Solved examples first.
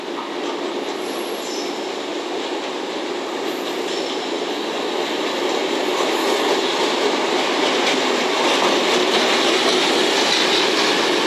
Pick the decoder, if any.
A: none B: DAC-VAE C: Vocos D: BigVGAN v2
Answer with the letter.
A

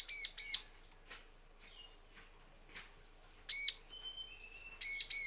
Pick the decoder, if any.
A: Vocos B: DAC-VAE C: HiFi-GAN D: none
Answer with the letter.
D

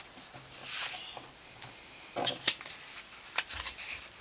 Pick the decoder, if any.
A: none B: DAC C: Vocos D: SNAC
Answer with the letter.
A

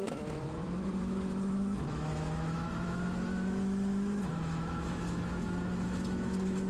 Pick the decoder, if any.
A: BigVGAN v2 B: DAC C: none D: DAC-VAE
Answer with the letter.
D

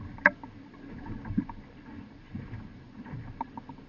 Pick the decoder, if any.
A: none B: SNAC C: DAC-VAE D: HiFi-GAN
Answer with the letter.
A